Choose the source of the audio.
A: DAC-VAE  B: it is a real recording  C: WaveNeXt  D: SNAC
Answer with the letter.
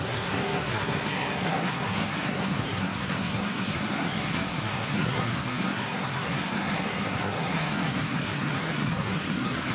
D